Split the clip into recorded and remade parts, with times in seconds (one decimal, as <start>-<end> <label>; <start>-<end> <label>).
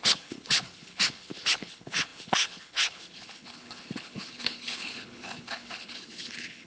0.0-6.7 remade